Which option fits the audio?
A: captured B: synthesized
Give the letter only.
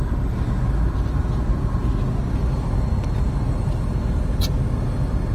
A